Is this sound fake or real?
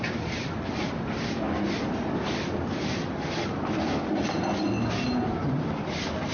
real